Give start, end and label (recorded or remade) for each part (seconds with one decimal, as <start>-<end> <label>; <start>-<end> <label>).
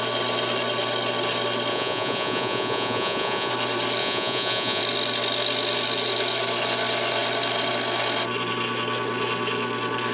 0.0-1.7 recorded; 1.7-3.5 remade; 3.5-4.0 recorded; 4.0-4.8 remade; 4.8-10.1 recorded